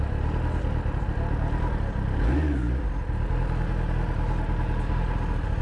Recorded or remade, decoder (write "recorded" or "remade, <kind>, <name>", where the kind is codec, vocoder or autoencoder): recorded